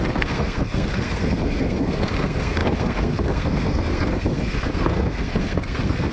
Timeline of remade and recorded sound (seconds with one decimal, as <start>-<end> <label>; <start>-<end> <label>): 0.0-6.1 remade